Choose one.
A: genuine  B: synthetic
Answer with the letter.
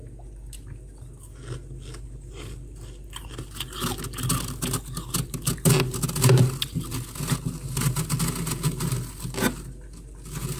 A